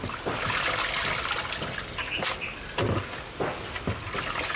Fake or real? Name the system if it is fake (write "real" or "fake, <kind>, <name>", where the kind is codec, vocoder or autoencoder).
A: real